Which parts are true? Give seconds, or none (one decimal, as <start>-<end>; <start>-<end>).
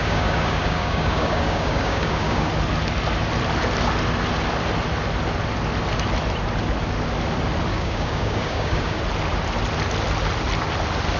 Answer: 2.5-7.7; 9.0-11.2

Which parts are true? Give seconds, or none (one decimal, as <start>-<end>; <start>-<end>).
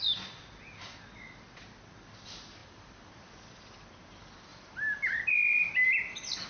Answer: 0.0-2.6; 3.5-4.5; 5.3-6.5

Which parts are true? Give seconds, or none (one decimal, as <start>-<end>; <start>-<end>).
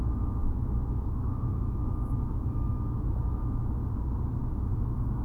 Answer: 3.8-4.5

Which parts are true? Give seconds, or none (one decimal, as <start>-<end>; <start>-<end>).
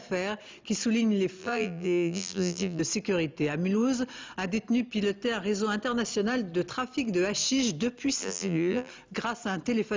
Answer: 0.0-1.4; 2.8-8.2; 8.9-10.0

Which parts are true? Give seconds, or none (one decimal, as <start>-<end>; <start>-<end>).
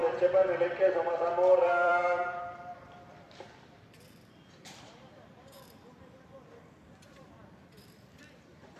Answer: none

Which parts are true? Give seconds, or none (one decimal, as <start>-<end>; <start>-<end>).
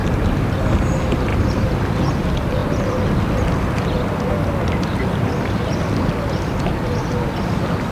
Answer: 0.5-1.3; 2.1-7.9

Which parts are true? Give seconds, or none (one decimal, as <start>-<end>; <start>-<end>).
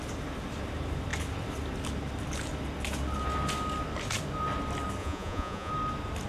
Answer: 0.0-5.0; 5.7-6.3